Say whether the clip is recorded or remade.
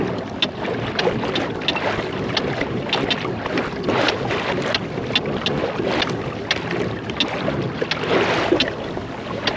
recorded